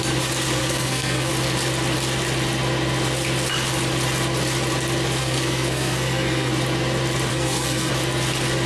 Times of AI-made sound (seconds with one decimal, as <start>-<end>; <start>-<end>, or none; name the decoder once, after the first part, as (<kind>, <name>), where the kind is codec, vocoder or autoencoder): 0.6-1.3 (codec, SNAC); 5.2-6.5; 7.3-7.9